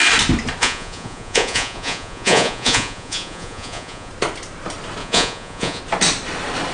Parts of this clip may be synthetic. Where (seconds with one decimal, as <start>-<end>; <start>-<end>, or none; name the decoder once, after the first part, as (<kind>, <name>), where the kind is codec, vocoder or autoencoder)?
0.6-4.1 (vocoder, Vocos); 5.0-5.8